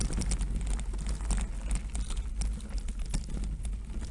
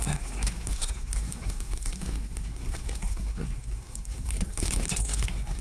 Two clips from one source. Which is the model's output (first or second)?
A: second